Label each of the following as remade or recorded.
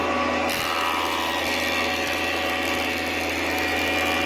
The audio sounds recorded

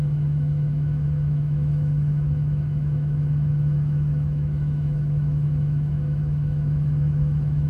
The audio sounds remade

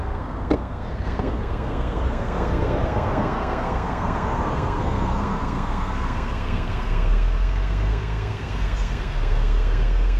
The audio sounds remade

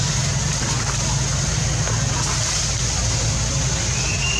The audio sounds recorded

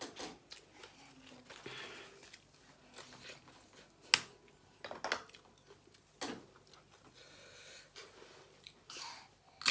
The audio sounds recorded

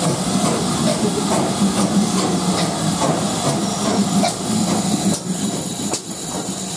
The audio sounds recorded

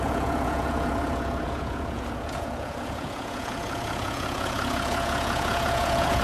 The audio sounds remade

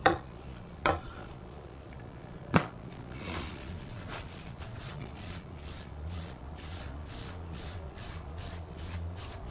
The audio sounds remade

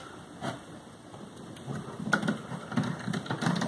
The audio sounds recorded